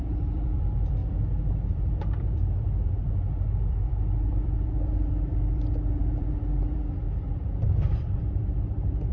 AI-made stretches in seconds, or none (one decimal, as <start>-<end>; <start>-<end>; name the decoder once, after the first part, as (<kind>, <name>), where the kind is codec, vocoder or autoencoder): 0.0-1.0 (vocoder, BigVGAN v2); 1.7-3.0; 3.7-9.1